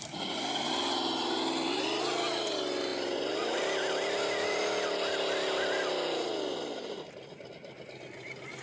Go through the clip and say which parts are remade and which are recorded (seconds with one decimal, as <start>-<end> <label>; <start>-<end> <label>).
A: 0.0-8.6 recorded

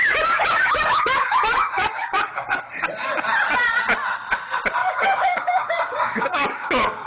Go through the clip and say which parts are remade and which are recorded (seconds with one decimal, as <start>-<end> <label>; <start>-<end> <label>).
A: 0.0-2.6 remade; 2.6-4.8 recorded; 4.8-7.1 remade

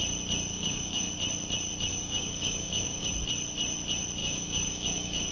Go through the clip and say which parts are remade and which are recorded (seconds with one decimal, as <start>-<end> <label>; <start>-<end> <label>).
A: 0.0-0.5 recorded; 0.5-1.1 remade; 1.1-1.9 recorded; 1.9-3.1 remade; 3.1-4.2 recorded; 4.2-5.3 remade

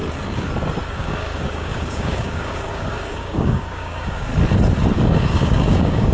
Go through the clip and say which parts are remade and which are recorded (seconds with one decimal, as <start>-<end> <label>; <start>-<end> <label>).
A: 0.0-0.9 recorded; 0.9-4.3 remade; 4.3-4.9 recorded; 4.9-6.1 remade

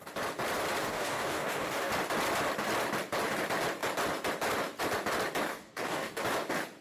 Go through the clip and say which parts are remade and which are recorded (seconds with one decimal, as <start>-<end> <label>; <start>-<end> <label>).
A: 0.0-0.8 recorded; 0.8-1.9 remade; 1.9-5.5 recorded; 5.5-6.2 remade; 6.2-6.8 recorded

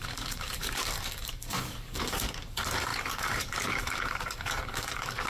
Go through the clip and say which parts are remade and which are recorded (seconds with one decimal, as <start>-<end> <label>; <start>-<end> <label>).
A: 0.0-5.3 remade

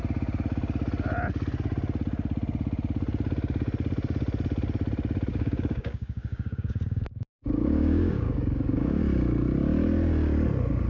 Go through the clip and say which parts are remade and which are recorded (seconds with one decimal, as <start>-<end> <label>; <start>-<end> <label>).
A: 0.0-5.3 recorded; 5.3-9.0 remade; 9.0-10.9 recorded

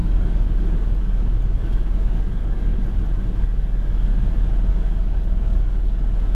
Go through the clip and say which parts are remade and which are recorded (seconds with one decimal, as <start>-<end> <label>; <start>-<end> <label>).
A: 0.0-2.8 remade; 2.8-3.4 recorded; 3.4-4.1 remade; 4.1-4.7 recorded; 4.7-6.3 remade